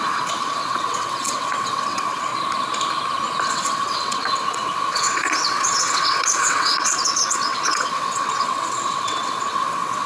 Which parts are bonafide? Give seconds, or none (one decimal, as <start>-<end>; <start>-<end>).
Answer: 2.3-3.4

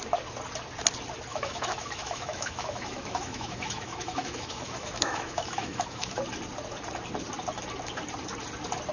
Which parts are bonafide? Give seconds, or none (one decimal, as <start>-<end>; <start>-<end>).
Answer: 0.0-1.3; 6.2-8.9

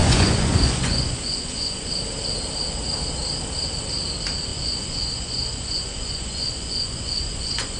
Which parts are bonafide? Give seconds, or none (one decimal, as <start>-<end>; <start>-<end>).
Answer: 1.9-4.5

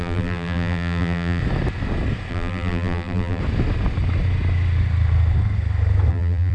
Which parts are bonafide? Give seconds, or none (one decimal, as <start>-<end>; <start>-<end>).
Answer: 1.4-2.3; 3.4-6.1

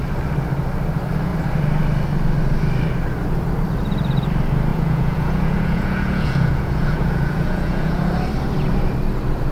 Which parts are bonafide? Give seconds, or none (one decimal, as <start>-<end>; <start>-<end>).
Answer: 0.0-4.7; 8.1-9.5

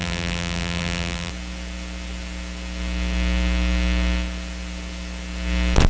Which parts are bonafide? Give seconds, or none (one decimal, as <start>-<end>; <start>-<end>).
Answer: 1.3-5.9

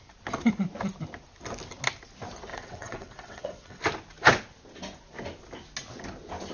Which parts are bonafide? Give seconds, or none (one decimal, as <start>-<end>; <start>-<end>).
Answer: 0.0-2.5; 3.8-6.5